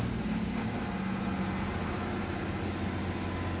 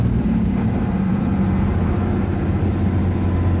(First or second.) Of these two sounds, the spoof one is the second